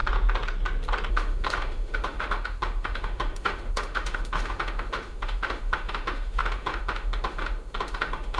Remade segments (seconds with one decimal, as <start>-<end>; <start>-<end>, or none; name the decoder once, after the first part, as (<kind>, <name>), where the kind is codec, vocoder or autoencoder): 1.1-8.4 (autoencoder, DAC-VAE)